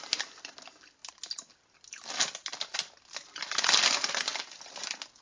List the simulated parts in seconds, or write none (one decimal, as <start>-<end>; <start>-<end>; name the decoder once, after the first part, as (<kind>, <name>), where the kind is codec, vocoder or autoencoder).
none